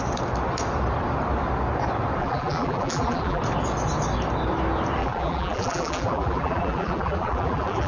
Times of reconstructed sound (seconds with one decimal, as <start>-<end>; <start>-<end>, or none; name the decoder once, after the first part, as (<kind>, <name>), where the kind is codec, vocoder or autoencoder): 2.2-3.4 (vocoder, BigVGAN v2); 5.0-7.9